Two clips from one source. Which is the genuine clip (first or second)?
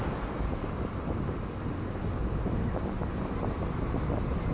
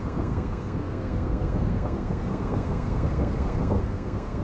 first